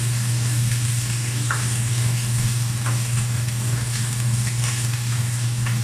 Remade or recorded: remade